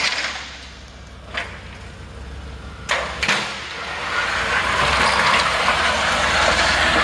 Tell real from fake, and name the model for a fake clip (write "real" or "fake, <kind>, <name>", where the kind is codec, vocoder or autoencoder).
real